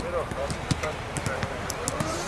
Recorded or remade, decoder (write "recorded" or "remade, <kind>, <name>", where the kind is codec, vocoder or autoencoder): recorded